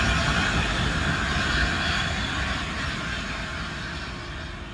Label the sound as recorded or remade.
recorded